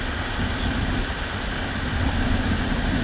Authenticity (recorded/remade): recorded